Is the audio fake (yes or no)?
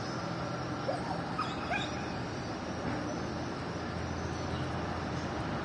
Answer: no